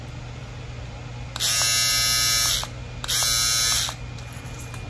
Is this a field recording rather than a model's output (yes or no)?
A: yes